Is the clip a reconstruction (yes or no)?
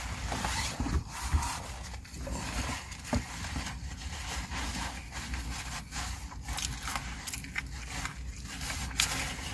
no